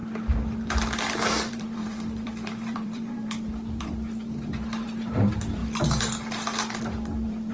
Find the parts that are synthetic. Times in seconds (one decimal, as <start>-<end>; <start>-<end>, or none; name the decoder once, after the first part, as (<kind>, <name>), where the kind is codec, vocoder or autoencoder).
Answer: 1.3-5.6 (vocoder, BigVGAN v2); 6.8-7.5